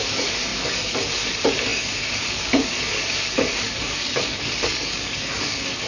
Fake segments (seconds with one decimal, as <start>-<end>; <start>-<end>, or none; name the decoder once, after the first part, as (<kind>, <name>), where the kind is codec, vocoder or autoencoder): 0.0-5.9 (codec, DAC)